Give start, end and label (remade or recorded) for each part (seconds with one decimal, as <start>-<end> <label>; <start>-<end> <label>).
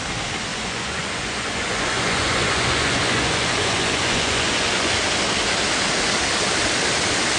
0.0-0.5 recorded; 0.5-4.9 remade; 4.9-7.4 recorded